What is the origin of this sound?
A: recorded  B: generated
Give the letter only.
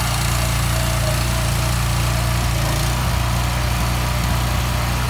A